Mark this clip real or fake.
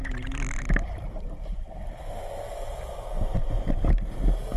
real